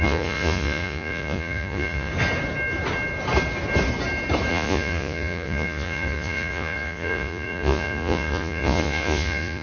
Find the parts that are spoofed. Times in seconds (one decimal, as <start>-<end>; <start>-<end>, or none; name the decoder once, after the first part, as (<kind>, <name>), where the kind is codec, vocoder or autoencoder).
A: 0.0-2.1 (vocoder, Vocos); 4.5-9.6